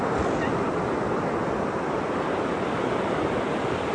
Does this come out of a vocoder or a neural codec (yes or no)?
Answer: no